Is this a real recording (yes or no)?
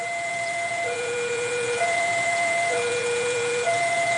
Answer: no